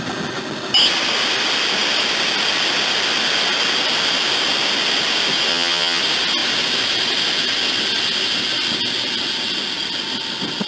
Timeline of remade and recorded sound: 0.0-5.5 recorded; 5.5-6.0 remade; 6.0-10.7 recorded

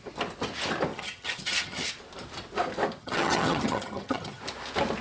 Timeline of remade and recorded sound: 0.0-0.9 recorded; 0.9-1.9 remade; 1.9-3.0 recorded; 3.0-4.4 remade; 4.4-5.0 recorded

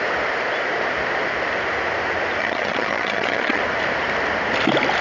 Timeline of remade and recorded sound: 0.0-2.4 recorded; 2.4-3.6 remade; 3.6-5.0 recorded

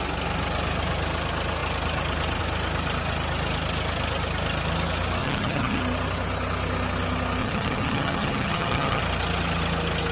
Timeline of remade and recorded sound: 0.0-5.2 recorded; 5.2-5.8 remade; 5.8-7.4 recorded; 7.4-9.0 remade; 9.0-10.1 recorded

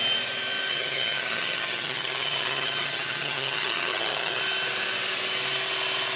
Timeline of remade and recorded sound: 0.0-0.7 recorded; 0.7-4.4 remade; 4.4-6.2 recorded

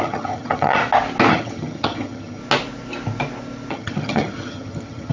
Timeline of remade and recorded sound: 0.0-0.8 remade; 0.8-1.3 recorded; 1.3-2.4 remade; 2.4-3.7 recorded; 3.7-5.1 remade

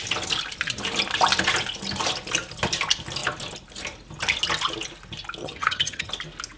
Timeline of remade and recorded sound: 0.0-5.4 recorded; 5.4-6.1 remade; 6.1-6.6 recorded

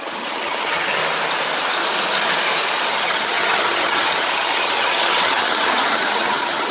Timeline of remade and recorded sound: 0.0-1.0 remade; 1.0-2.9 recorded; 2.9-6.7 remade